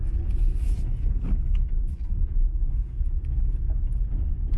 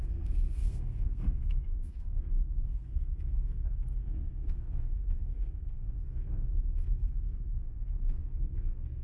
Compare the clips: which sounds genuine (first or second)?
first